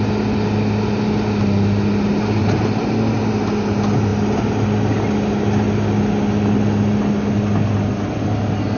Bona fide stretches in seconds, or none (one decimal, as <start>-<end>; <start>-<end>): 0.0-2.4; 2.9-8.8